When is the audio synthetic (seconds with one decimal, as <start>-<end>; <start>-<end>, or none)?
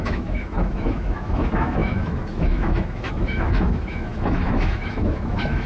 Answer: 0.0-5.7